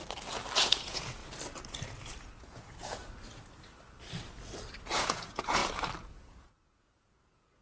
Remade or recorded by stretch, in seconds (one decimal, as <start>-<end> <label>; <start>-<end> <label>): 0.0-0.6 recorded; 0.6-1.2 remade; 1.2-2.2 recorded; 2.2-3.0 remade; 3.0-4.7 recorded; 4.7-5.6 remade; 5.6-6.1 recorded; 6.1-7.6 remade

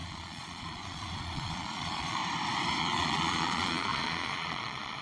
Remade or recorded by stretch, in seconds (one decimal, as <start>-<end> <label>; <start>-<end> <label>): 0.0-2.2 remade; 2.2-2.8 recorded; 2.8-5.0 remade

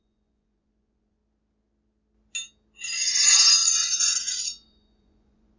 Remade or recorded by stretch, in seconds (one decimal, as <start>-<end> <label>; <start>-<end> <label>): 0.0-1.2 remade; 1.2-3.1 recorded; 3.1-5.6 remade

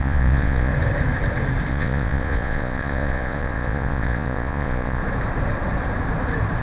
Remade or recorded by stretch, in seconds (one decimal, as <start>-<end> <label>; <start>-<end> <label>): 0.0-0.7 remade; 0.7-1.7 recorded; 1.7-5.0 remade; 5.0-6.6 recorded

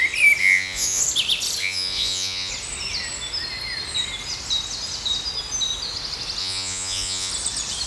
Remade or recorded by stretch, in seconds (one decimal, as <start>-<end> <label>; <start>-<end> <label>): 0.0-0.4 recorded; 0.4-1.0 remade; 1.0-1.6 recorded; 1.6-2.5 remade; 2.5-6.4 recorded; 6.4-7.3 remade; 7.3-7.9 recorded

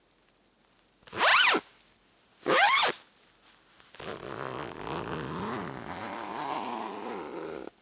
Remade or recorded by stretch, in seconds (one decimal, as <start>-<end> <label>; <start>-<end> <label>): 0.0-7.8 recorded